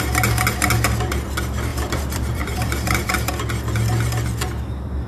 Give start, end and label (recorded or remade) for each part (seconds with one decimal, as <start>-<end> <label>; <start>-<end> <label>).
0.0-1.7 recorded; 1.7-3.1 remade; 3.1-5.1 recorded